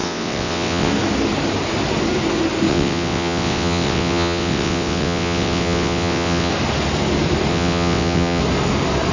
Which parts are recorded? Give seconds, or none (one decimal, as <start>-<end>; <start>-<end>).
0.9-2.7; 6.5-7.5; 8.4-9.1